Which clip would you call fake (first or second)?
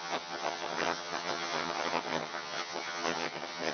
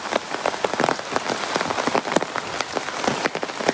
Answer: first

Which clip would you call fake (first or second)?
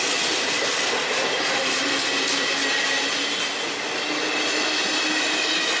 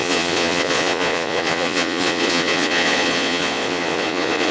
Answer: second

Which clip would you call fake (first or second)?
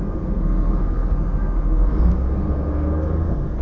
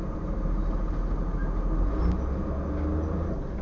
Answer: first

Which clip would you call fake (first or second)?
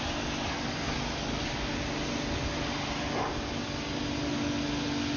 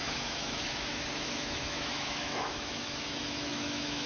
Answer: second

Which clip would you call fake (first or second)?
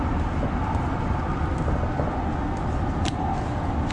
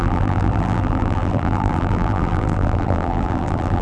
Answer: second